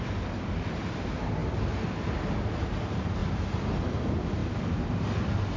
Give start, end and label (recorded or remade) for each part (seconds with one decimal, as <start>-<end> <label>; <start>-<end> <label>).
0.0-1.4 remade; 1.4-2.6 recorded; 2.6-4.4 remade; 4.4-5.6 recorded